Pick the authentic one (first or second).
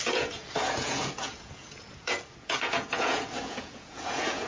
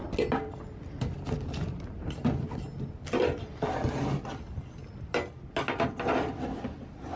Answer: second